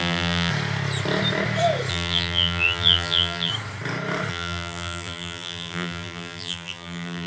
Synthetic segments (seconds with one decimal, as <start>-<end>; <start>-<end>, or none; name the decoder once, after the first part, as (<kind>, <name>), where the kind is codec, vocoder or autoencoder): 0.0-0.5 (vocoder, BigVGAN v2); 1.9-3.5; 4.3-7.3